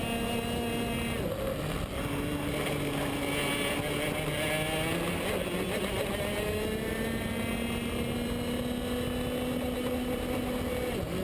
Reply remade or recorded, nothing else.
recorded